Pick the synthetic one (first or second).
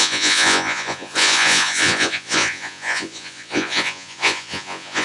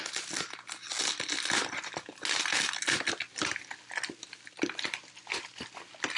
first